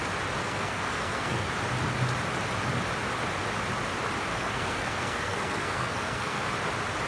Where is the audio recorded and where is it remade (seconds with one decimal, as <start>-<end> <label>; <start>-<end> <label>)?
0.0-0.4 recorded; 0.4-1.5 remade; 1.5-4.3 recorded; 4.3-6.5 remade; 6.5-7.1 recorded